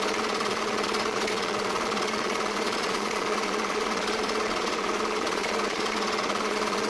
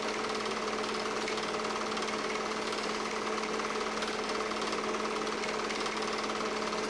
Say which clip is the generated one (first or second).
first